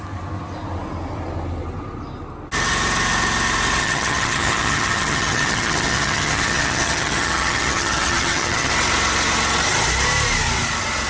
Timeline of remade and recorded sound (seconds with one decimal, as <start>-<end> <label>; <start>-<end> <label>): 0.0-3.8 recorded; 3.8-8.7 remade; 8.7-11.1 recorded